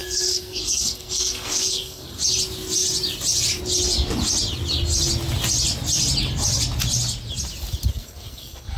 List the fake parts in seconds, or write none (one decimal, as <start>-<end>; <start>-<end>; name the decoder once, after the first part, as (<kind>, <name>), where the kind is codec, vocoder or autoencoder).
0.0-2.2 (codec, SNAC); 7.9-8.8